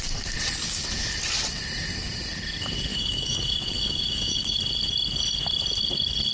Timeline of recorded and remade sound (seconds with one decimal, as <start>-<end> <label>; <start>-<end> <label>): 0.0-2.9 recorded; 2.9-4.6 remade; 4.6-6.3 recorded